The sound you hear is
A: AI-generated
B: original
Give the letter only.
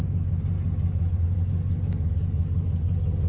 B